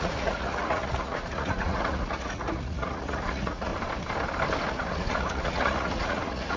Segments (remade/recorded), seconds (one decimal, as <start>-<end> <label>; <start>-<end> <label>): 0.0-3.7 remade; 3.7-4.7 recorded; 4.7-6.6 remade